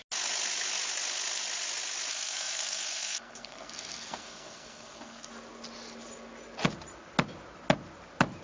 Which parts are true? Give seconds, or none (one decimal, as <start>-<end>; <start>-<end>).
0.0-2.1; 5.3-8.4